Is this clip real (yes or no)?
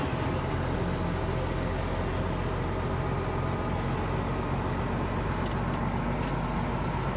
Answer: yes